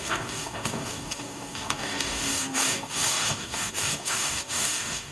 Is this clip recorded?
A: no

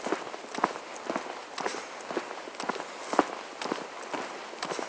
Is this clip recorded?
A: yes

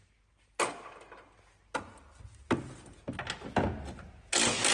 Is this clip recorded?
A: yes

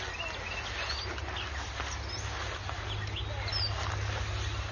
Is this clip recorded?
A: yes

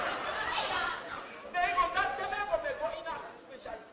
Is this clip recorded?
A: yes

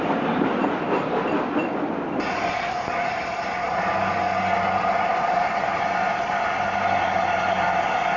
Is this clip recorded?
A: yes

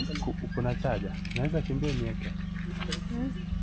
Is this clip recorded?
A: yes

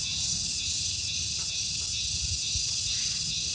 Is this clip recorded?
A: yes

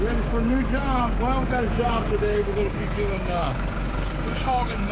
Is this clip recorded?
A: no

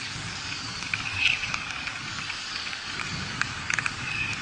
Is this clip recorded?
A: no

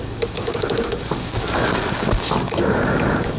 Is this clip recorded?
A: no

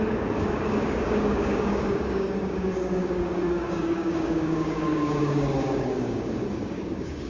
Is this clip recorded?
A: no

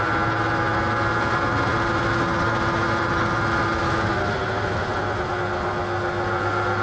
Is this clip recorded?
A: yes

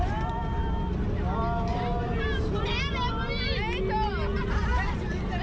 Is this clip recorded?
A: yes